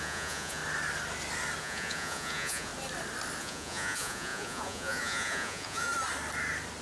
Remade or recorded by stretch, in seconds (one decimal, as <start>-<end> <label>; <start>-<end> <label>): 0.0-0.6 remade; 0.6-1.6 recorded; 1.6-2.7 remade; 2.7-3.4 recorded; 3.4-5.9 remade; 5.9-6.8 recorded